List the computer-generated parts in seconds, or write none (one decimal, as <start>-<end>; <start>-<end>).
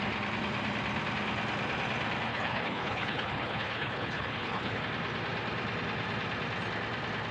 2.3-4.8